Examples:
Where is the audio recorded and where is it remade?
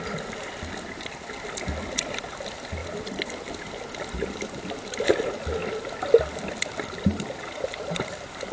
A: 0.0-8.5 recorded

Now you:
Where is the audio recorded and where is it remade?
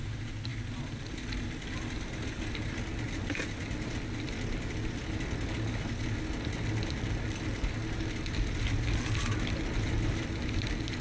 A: 0.0-11.0 recorded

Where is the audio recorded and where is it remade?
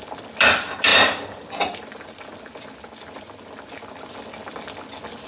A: 0.0-5.3 recorded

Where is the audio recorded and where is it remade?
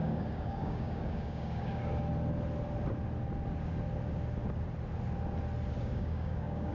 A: 0.0-1.8 remade; 1.8-5.8 recorded; 5.8-6.7 remade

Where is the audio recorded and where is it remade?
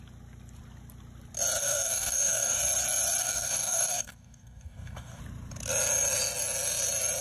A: 0.0-1.6 recorded; 1.6-2.6 remade; 2.6-3.2 recorded; 3.2-5.2 remade; 5.2-7.2 recorded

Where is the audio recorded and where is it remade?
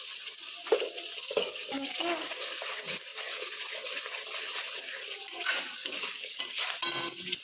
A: 0.0-1.2 recorded; 1.2-2.3 remade; 2.3-5.8 recorded; 5.8-6.4 remade; 6.4-7.4 recorded